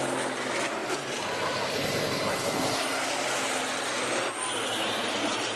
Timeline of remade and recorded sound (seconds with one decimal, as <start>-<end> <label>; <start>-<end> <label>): 0.0-5.6 recorded

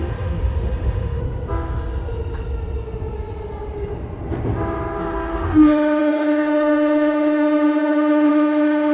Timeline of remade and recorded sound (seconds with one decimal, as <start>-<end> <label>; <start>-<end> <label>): 0.0-1.2 remade; 1.2-5.0 recorded; 5.0-8.9 remade

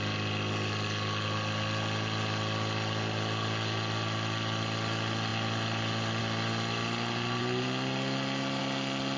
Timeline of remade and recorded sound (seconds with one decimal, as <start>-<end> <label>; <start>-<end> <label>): 0.0-9.2 recorded